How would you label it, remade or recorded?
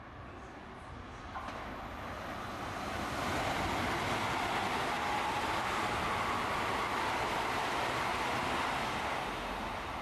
recorded